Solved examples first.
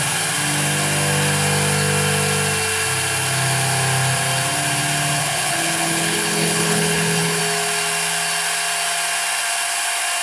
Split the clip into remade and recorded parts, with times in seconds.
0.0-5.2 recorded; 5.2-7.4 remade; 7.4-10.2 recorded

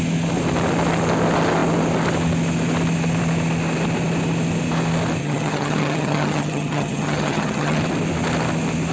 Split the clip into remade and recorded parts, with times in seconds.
0.0-5.2 recorded; 5.2-7.8 remade; 7.8-8.9 recorded

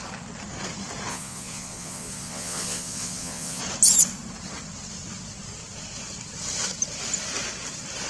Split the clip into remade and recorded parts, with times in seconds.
0.0-1.1 recorded; 1.1-3.6 remade; 3.6-8.1 recorded

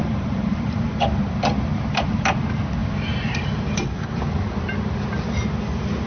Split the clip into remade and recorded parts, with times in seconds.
0.0-2.2 remade; 2.2-2.8 recorded; 2.8-4.6 remade; 4.6-6.1 recorded